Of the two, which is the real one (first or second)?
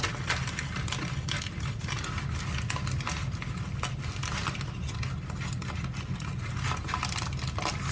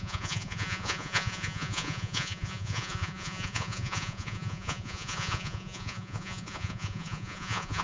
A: first